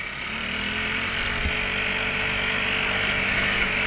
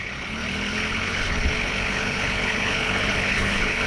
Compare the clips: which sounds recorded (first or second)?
first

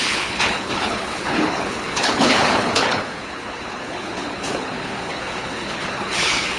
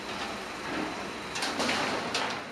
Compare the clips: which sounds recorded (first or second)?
second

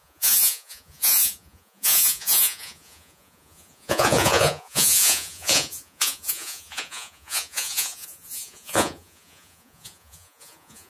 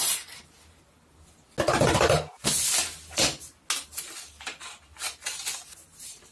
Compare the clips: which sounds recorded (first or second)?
second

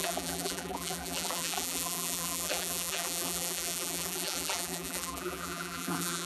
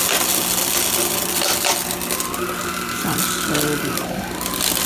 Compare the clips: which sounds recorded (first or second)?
second